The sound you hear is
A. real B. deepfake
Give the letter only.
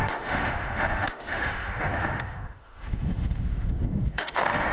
B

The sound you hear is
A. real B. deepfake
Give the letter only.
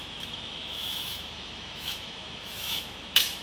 B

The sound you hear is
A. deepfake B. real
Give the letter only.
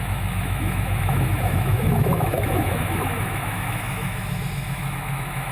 A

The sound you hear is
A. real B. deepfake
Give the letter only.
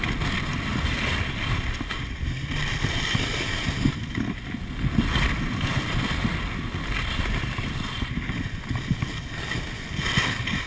A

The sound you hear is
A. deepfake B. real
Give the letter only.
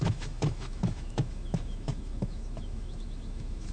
A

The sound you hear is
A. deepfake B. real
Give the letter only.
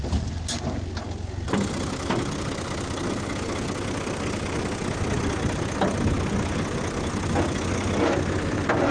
B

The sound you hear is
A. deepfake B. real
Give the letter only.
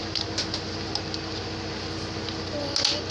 B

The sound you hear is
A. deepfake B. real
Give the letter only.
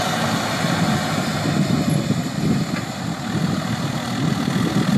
B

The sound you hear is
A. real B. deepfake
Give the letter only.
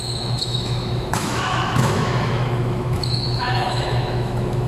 B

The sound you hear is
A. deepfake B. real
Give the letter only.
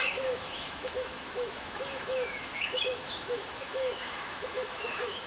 A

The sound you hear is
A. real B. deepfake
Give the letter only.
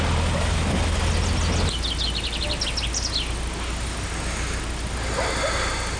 A